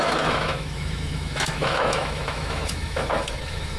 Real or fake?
fake